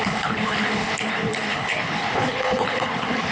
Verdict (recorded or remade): remade